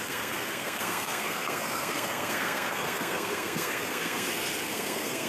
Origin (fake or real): fake